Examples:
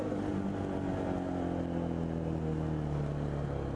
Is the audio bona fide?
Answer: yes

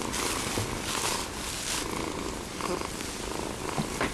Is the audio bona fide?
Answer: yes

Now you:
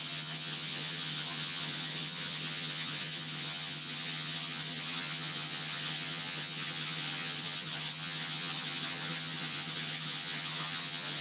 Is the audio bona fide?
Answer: no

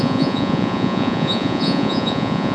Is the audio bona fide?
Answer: no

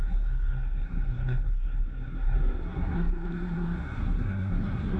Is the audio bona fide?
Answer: no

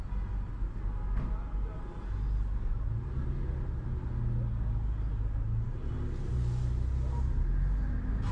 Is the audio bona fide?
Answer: yes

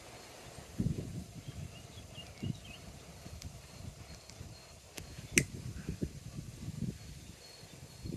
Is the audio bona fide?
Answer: yes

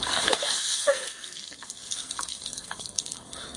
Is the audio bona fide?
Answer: no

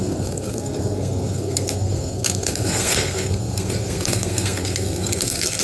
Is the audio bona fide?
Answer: no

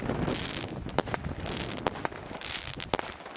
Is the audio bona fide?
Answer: yes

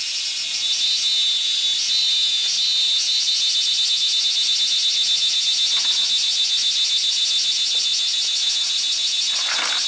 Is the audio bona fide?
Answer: yes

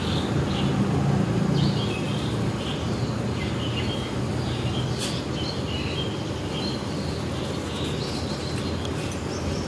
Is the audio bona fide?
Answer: yes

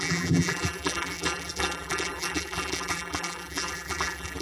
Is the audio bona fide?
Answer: no